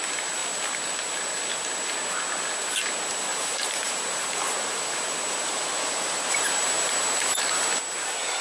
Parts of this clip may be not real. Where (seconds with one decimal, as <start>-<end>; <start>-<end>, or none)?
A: 3.3-7.4